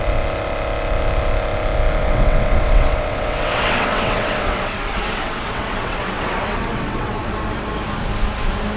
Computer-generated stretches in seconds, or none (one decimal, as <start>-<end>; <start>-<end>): 2.0-7.2